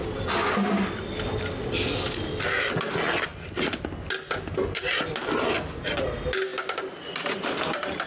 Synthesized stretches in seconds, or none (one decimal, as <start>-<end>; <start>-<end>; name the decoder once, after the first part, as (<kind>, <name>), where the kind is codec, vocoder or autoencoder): 6.5-7.5 (vocoder, BigVGAN v2)